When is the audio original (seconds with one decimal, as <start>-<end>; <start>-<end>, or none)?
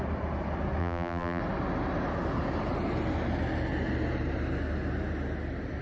0.0-0.8; 1.4-5.8